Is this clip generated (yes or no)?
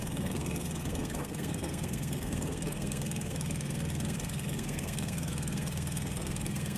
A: yes